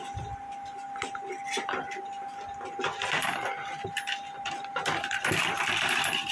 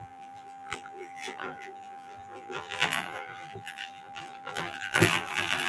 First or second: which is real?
first